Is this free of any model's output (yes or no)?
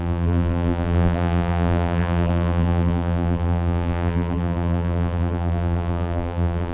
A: no